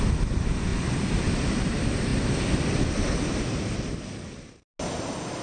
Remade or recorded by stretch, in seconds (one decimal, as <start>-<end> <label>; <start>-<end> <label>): 0.0-5.4 recorded